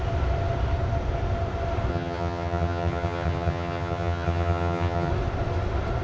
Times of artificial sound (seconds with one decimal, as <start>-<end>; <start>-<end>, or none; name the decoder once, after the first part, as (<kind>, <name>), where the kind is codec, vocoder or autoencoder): 1.9-5.1 (vocoder, HiFi-GAN)